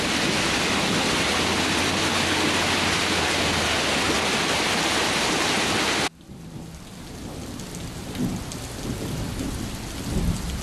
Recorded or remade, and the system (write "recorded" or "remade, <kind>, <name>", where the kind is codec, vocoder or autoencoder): recorded